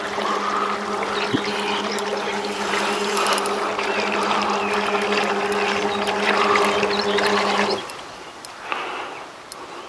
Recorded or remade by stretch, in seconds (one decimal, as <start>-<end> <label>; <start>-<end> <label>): 0.0-9.9 recorded